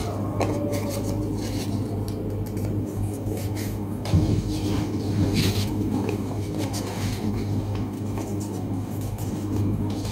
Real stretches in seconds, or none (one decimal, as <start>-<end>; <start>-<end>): 0.0-2.8

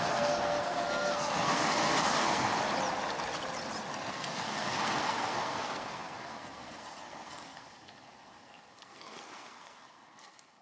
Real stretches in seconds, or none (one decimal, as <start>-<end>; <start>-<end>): 2.5-4.1

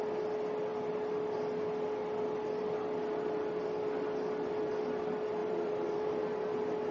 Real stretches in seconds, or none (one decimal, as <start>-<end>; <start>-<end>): 0.0-5.4; 6.1-6.9

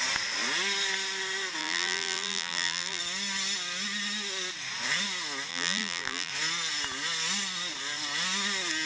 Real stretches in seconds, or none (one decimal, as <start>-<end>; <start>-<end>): 0.0-1.6; 3.0-5.5; 6.3-8.9

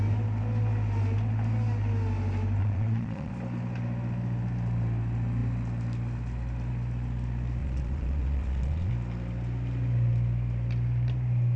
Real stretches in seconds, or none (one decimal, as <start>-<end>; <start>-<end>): 0.0-2.6; 3.3-7.6; 8.9-11.6

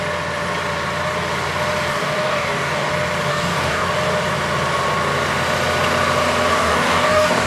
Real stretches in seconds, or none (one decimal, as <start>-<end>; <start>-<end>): 0.0-1.9; 2.9-3.3; 3.9-6.5

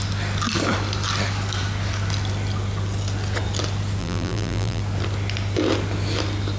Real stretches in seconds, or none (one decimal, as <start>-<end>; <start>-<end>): 0.0-4.0; 4.8-6.6

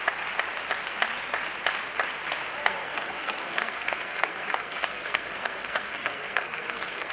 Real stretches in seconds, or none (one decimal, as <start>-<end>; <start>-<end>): 0.0-2.6